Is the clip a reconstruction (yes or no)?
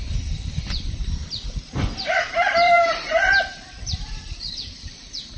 yes